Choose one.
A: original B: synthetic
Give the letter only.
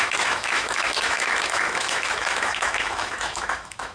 B